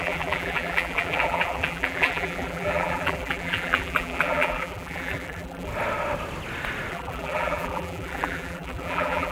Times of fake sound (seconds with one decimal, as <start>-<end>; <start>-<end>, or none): 0.0-5.7; 6.9-9.3